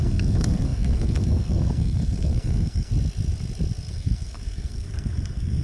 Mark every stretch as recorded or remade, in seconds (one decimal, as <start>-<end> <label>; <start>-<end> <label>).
0.0-2.9 remade; 2.9-3.9 recorded; 3.9-5.6 remade